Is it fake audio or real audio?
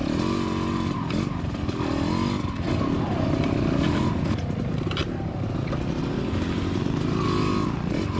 real